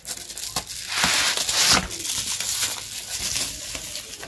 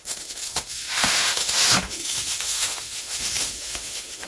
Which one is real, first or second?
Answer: first